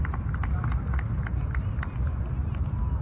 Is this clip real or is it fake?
real